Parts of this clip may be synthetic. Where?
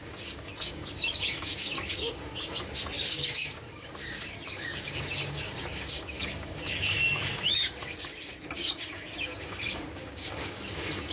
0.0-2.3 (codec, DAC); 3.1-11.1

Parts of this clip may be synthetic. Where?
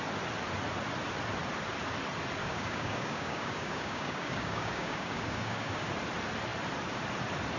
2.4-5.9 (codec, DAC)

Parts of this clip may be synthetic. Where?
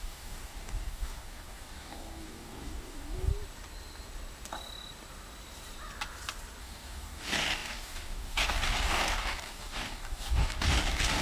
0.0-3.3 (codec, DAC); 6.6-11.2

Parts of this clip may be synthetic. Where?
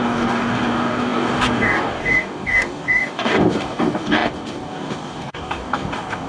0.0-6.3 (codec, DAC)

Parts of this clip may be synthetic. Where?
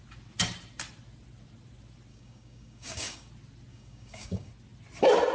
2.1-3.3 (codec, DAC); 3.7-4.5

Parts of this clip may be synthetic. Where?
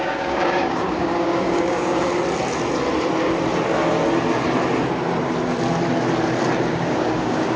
0.0-2.1 (codec, DAC); 6.7-7.6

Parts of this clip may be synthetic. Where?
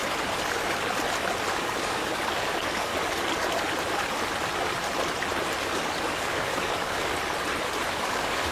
1.5-2.9 (codec, DAC); 5.6-7.1; 7.9-8.5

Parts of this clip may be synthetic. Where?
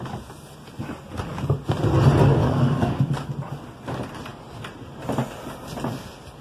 2.4-3.3 (codec, DAC)